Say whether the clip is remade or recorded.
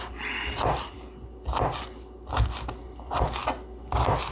recorded